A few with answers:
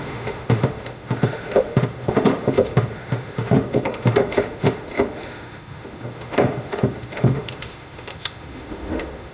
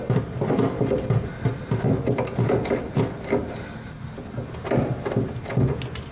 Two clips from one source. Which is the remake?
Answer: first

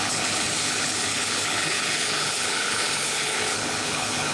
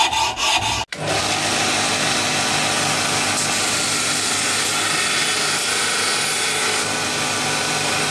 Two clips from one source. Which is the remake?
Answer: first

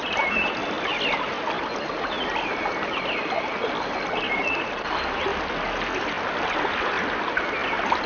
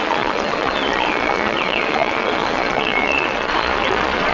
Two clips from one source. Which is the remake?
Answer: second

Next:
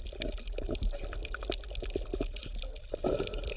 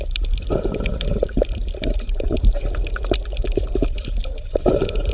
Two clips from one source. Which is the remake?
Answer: second